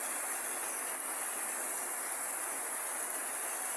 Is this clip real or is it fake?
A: real